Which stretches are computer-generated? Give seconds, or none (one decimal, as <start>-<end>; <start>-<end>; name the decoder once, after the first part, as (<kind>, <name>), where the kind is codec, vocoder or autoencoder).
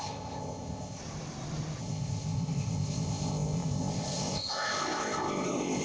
0.0-1.0 (codec, ZipCodec); 1.8-5.8